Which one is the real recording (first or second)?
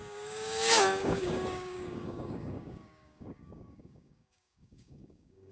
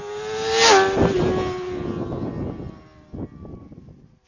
second